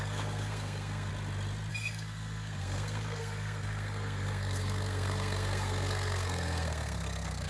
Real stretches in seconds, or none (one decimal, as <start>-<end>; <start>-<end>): 1.1-1.7